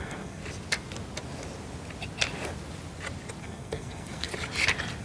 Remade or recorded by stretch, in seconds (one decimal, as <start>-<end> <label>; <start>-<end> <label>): 0.0-0.4 remade; 0.4-3.4 recorded; 3.4-4.3 remade; 4.3-5.0 recorded